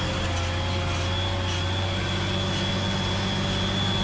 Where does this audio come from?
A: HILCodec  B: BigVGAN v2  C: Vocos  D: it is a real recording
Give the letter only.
D